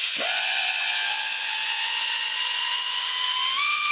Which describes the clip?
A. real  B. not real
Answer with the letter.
B